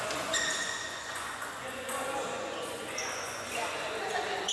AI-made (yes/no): yes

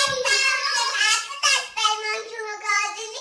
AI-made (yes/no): yes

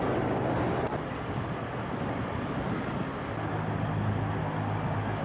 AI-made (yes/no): no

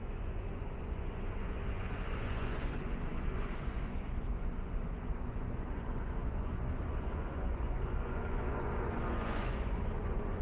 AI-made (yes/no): yes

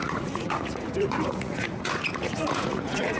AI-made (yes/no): yes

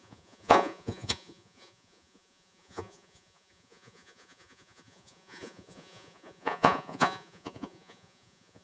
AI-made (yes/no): yes